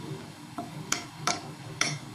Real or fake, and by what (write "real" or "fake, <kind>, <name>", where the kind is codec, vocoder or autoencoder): fake, codec, DAC